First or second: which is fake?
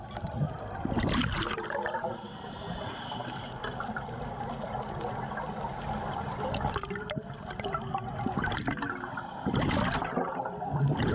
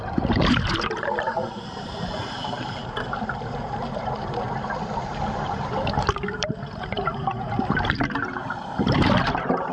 second